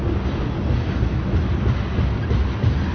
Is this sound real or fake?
real